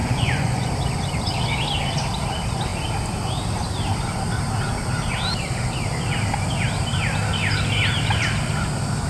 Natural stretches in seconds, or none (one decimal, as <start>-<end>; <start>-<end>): 0.7-9.1